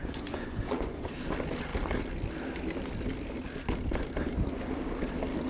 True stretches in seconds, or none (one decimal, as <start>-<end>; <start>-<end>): 1.1-5.5